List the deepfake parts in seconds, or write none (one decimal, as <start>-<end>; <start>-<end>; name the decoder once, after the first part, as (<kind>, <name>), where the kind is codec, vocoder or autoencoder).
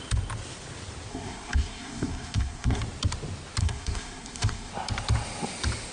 1.1-2.8 (codec, SNAC); 3.6-4.7